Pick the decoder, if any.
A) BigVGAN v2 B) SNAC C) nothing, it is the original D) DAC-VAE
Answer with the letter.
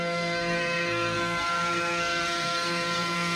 B